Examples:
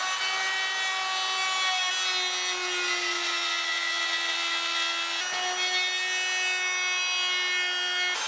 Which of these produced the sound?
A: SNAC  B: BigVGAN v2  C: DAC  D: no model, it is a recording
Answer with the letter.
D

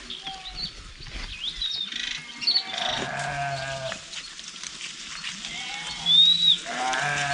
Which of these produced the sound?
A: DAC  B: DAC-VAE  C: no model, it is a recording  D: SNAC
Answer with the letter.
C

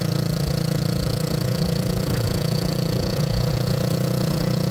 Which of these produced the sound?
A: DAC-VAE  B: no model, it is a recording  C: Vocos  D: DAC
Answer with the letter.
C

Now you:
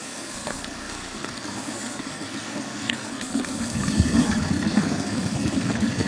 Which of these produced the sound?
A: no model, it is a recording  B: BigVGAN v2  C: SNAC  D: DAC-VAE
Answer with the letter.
C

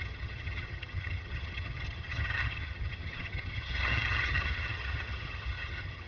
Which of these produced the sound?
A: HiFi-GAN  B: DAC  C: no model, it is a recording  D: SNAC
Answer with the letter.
A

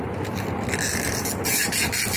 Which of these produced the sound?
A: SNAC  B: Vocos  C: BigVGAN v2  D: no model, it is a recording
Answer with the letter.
D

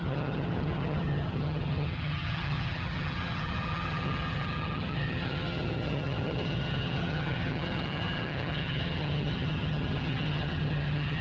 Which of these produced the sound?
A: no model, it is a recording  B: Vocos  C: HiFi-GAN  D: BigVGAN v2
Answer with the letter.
C